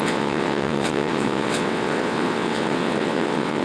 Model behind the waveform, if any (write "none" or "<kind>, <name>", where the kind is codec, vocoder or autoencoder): vocoder, WaveNeXt